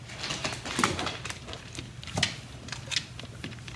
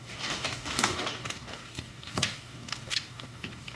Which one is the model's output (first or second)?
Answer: second